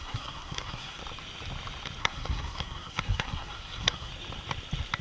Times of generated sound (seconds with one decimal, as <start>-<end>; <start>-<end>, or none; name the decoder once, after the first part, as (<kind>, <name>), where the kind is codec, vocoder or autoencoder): 0.0-1.0 (codec, SNAC); 2.0-4.1